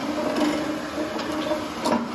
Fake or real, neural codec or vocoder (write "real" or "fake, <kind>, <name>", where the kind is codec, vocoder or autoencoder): real